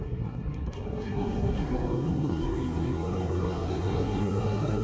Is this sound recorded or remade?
remade